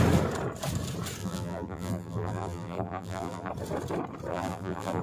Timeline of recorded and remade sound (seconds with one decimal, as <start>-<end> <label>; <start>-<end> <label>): 0.0-1.2 recorded; 1.2-3.5 remade; 3.5-4.3 recorded; 4.3-5.0 remade